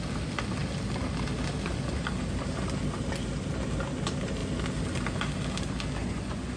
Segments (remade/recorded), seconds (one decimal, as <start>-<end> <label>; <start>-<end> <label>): 0.0-6.0 recorded; 6.0-6.6 remade